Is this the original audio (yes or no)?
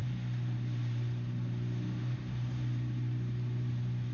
yes